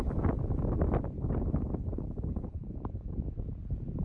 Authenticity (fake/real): real